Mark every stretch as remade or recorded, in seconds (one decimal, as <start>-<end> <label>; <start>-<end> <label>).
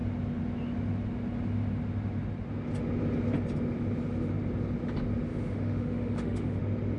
0.0-5.3 recorded; 5.3-6.6 remade; 6.6-7.0 recorded